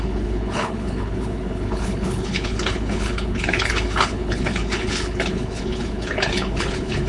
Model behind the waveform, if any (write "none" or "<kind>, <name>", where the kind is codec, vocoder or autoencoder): codec, HILCodec